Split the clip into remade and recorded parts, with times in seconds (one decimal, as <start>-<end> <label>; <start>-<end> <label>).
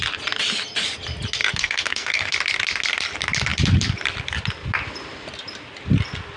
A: 0.0-1.4 recorded; 1.4-2.3 remade; 2.3-6.4 recorded